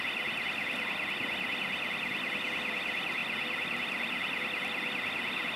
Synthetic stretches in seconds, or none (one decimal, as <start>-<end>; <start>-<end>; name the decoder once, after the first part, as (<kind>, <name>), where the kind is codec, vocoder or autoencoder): none